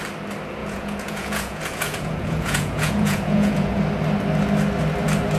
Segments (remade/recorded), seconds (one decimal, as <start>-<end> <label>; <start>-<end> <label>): 0.0-0.6 recorded; 0.6-3.8 remade; 3.8-5.4 recorded